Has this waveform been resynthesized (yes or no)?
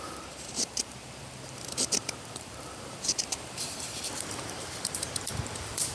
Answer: yes